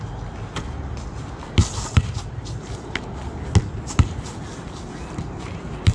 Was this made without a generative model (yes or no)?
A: yes